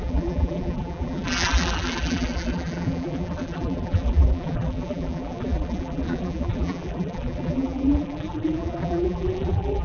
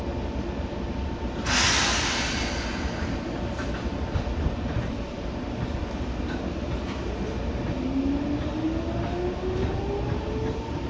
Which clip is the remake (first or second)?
first